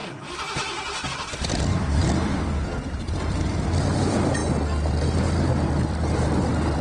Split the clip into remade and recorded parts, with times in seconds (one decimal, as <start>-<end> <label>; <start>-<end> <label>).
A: 0.0-0.8 recorded; 0.8-2.0 remade; 2.0-2.6 recorded; 2.6-4.4 remade; 4.4-5.5 recorded; 5.5-6.8 remade